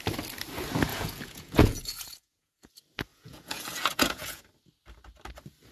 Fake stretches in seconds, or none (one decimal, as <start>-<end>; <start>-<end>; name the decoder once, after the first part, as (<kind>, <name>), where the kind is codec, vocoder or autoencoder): 0.9-2.7 (vocoder, Vocos); 3.1-4.4